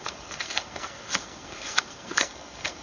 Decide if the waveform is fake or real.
fake